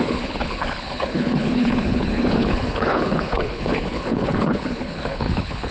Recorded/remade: remade